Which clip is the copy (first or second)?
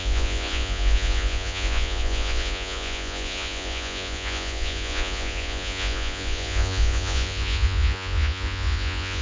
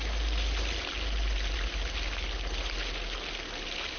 first